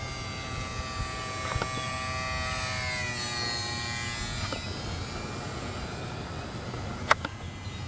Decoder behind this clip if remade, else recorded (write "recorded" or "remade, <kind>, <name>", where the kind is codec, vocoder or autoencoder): recorded